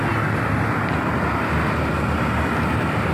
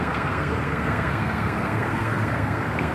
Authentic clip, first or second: first